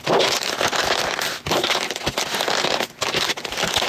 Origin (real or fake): real